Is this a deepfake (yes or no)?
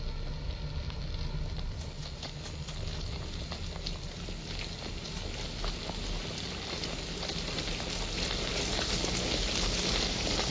no